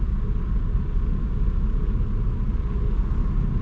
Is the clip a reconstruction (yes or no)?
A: no